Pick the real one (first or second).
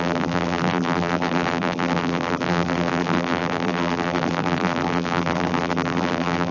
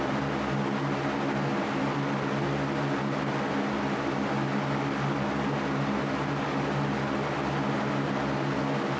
second